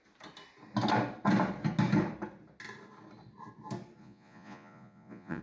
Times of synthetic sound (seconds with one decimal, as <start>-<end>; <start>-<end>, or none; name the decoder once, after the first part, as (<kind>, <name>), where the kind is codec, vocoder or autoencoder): 4.0-5.4 (vocoder, Vocos)